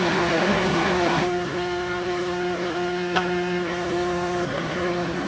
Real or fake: fake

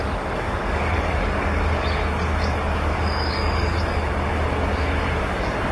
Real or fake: fake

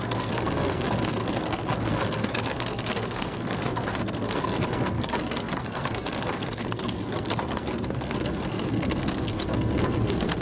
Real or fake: fake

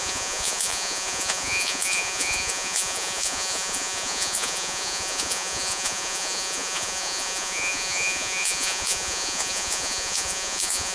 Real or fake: fake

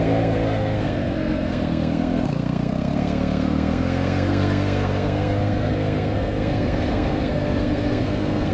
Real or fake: fake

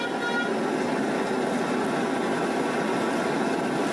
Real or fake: real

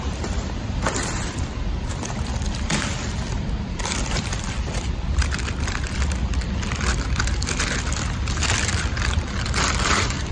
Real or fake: fake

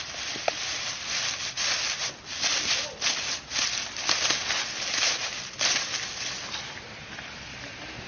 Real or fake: real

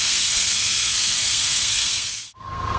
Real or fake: fake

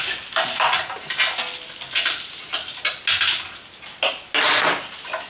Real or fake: real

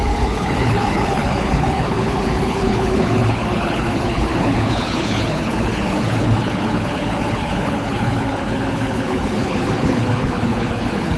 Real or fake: fake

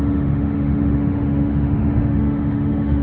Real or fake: fake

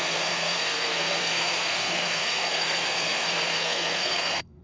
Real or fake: fake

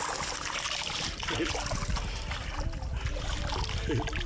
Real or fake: real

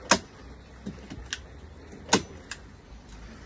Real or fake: real